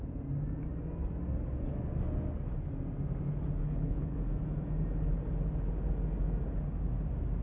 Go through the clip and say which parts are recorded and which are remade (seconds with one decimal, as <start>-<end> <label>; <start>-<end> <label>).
0.0-3.6 recorded; 3.6-4.2 remade; 4.2-7.4 recorded